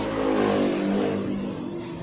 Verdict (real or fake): real